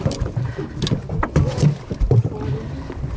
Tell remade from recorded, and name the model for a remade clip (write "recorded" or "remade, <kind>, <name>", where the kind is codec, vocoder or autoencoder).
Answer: recorded